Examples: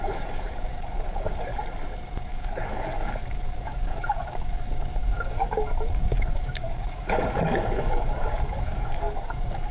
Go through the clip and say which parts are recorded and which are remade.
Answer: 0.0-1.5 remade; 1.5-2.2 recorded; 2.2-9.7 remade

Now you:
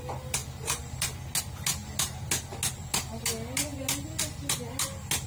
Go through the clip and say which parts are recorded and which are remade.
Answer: 0.0-5.3 recorded

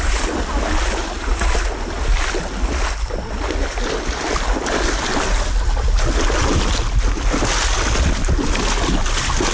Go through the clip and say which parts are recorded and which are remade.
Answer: 0.0-9.5 recorded

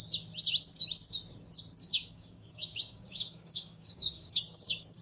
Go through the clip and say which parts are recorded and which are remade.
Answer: 0.0-1.8 recorded; 1.8-5.0 remade

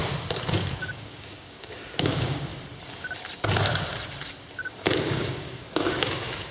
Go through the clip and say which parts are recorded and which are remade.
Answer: 0.0-0.8 recorded; 0.8-2.5 remade; 2.5-4.5 recorded; 4.5-6.5 remade

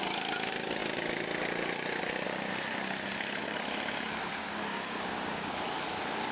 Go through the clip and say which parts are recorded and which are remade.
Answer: 0.0-4.4 recorded; 4.4-5.5 remade; 5.5-6.3 recorded